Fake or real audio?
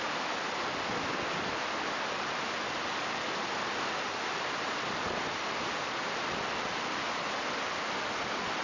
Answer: real